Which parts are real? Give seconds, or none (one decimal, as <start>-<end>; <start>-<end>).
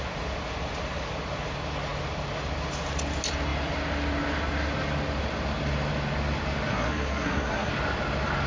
0.0-6.7; 7.7-8.5